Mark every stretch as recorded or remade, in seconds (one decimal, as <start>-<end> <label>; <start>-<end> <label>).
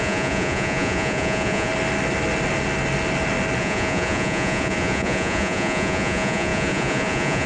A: 0.0-1.7 remade; 1.7-3.6 recorded; 3.6-7.5 remade